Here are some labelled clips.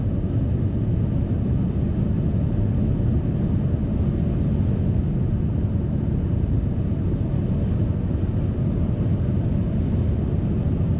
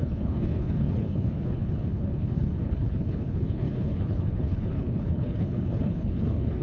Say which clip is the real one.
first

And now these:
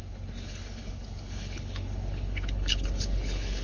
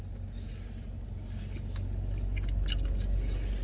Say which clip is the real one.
second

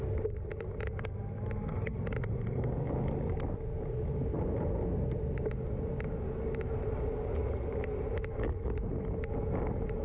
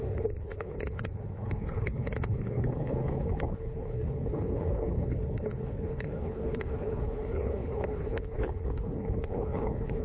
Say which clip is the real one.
first